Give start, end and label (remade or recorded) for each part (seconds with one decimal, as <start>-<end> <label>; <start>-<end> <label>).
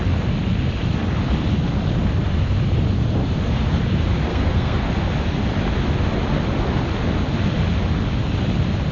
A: 0.0-4.3 recorded; 4.3-4.9 remade; 4.9-8.9 recorded